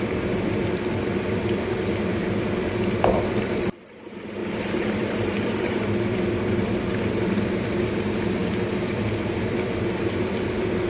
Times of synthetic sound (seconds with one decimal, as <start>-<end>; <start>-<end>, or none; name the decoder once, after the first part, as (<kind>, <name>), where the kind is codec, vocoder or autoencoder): 0.0-4.4 (vocoder, BigVGAN v2); 4.9-10.9

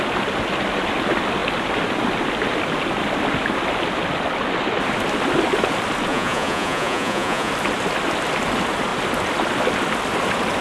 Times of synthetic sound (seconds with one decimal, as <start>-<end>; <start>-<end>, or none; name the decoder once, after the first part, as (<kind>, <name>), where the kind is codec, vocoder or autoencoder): 6.1-7.5 (vocoder, Vocos)